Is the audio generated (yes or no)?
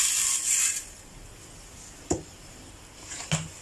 no